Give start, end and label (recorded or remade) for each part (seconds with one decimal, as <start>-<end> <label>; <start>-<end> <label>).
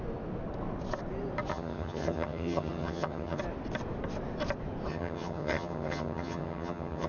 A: 0.0-1.5 recorded; 1.5-3.4 remade; 3.4-4.9 recorded; 4.9-7.1 remade